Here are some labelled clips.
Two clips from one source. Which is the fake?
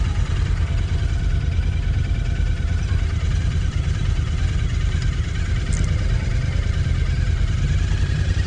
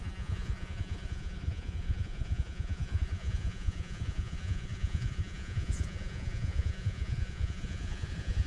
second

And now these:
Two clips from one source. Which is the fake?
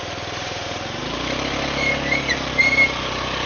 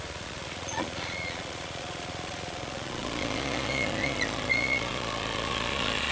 second